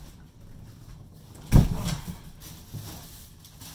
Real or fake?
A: real